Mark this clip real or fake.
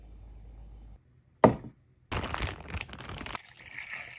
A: real